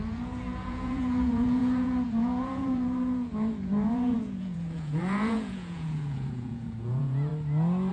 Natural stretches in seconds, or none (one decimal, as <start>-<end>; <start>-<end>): 7.3-7.9

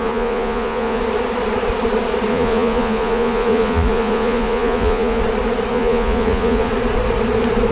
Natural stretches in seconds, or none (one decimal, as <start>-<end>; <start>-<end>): 1.0-2.3; 5.2-5.7; 6.7-7.7

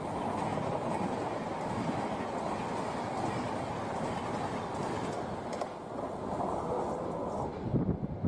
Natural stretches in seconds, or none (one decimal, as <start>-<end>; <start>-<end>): 0.0-8.3

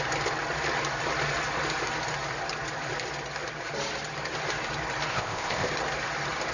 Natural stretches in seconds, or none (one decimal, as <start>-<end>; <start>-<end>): 0.0-5.1; 5.7-6.5

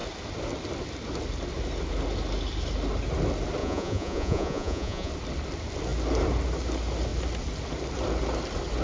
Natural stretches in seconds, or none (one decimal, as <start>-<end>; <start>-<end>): 0.0-3.6; 5.1-8.8

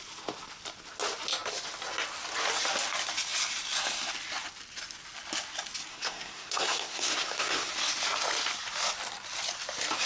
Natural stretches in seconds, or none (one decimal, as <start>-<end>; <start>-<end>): 0.0-5.9; 7.7-10.1

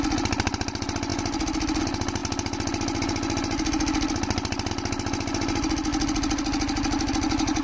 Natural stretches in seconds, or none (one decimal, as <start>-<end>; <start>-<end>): 0.0-7.6

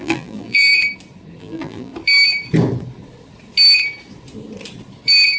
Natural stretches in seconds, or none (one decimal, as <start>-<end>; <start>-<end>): 0.7-1.4; 1.9-5.4